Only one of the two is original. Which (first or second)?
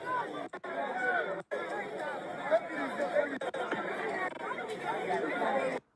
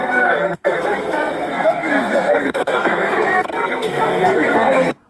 first